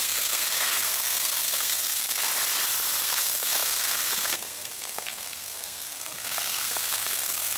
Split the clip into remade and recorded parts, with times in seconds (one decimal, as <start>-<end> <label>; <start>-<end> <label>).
0.0-2.3 remade; 2.3-3.0 recorded; 3.0-7.6 remade